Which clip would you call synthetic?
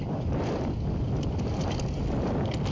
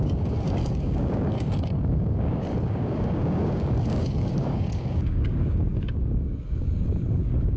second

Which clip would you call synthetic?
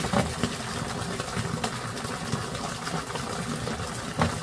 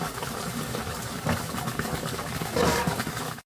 second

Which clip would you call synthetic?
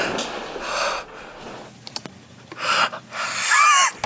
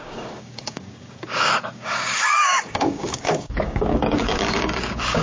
second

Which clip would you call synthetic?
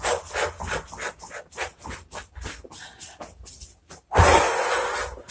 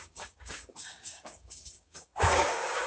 second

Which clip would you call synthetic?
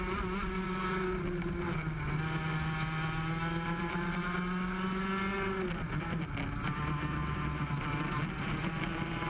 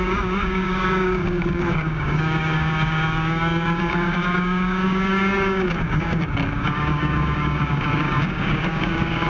second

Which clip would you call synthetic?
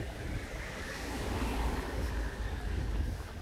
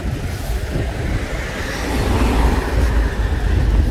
first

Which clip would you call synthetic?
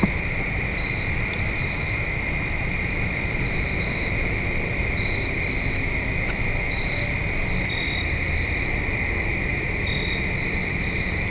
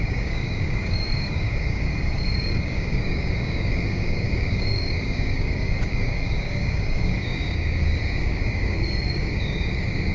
second